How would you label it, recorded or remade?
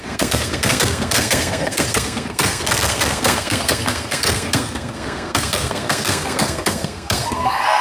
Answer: remade